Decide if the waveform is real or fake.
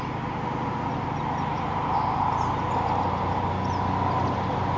real